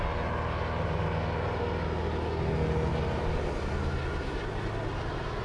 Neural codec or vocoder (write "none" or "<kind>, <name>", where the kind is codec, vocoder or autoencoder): none